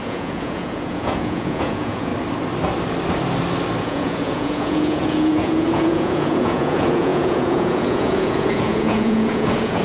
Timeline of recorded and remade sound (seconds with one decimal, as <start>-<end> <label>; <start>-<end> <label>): 0.0-2.1 remade; 2.1-3.8 recorded; 3.8-9.8 remade